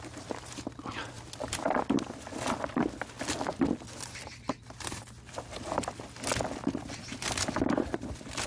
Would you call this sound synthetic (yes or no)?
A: no